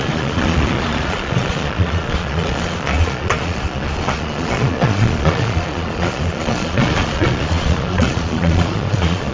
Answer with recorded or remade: remade